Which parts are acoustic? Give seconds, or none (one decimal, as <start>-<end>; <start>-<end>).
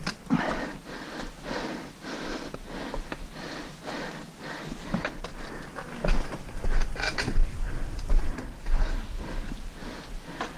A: 0.0-8.6; 9.1-10.6